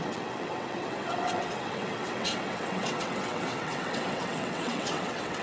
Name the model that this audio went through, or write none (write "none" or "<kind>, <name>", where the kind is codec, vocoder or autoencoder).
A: vocoder, WaveNeXt